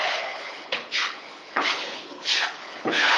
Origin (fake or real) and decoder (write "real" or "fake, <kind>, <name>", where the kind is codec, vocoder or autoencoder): fake, codec, HILCodec